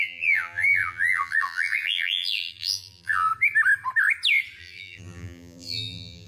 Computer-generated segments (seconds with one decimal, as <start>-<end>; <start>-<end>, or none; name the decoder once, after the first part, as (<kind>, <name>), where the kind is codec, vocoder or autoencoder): 0.0-3.3 (vocoder, BigVGAN v2); 4.6-6.3